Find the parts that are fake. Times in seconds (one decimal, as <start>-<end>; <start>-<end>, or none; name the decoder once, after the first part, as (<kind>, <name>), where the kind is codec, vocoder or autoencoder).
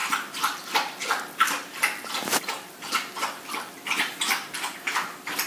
none